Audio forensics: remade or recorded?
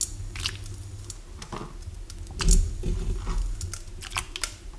recorded